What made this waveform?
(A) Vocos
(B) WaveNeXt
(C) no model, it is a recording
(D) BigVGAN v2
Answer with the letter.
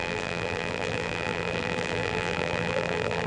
D